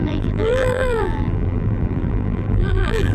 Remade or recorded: remade